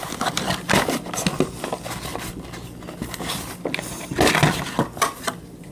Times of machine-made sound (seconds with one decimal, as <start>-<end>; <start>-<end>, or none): none